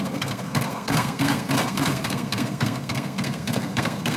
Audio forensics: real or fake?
fake